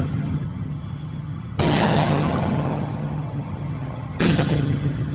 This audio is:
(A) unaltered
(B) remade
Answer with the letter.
B